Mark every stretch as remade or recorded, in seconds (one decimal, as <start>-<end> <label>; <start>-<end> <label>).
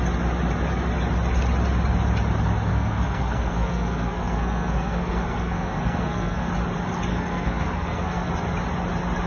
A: 0.0-2.7 recorded; 2.7-6.5 remade; 6.5-7.1 recorded; 7.1-8.3 remade; 8.3-9.3 recorded